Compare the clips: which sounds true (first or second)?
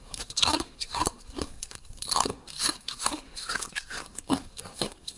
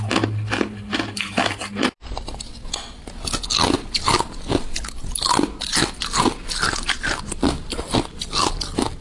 second